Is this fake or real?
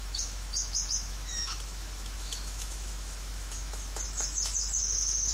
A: fake